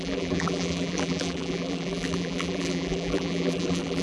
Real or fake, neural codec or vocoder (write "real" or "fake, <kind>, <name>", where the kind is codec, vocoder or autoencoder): fake, vocoder, BigVGAN v2